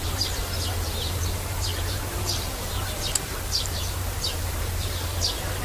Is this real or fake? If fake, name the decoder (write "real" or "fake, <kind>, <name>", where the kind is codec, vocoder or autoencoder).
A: fake, vocoder, BigVGAN v2